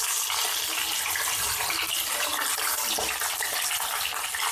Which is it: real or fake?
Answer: real